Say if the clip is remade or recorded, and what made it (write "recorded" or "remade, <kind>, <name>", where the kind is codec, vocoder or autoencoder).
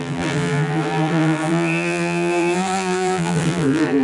remade, vocoder, BigVGAN v2